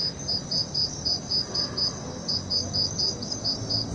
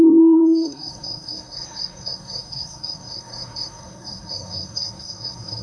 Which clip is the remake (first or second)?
second